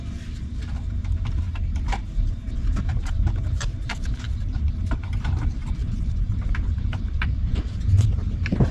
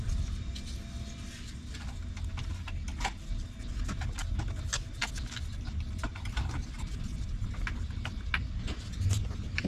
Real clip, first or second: second